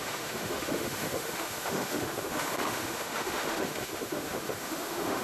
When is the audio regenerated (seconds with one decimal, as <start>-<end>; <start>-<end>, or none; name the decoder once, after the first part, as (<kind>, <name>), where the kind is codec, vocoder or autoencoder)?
0.0-5.2 (autoencoder, DAC-VAE)